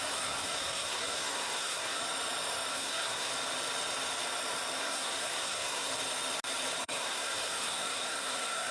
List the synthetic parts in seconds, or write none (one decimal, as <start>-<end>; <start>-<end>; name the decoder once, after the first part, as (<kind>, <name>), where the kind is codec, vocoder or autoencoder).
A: 0.0-2.0 (codec, SNAC); 2.7-3.3; 4.8-5.9; 6.8-8.7